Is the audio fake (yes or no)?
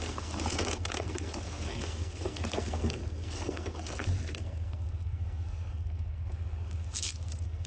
yes